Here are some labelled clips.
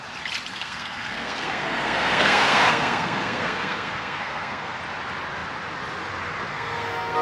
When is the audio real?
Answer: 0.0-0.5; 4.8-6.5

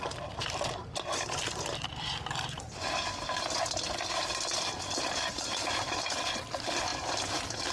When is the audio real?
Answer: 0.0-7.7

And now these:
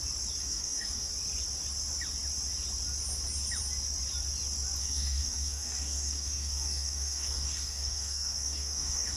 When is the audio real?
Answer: 0.0-0.4; 1.1-4.8